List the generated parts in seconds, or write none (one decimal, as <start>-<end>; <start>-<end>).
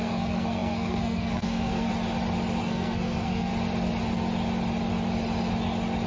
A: 0.0-1.9; 2.6-3.5